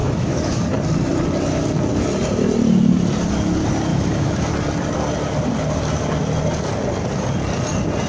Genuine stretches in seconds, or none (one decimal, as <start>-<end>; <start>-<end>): 0.6-3.9; 4.5-8.1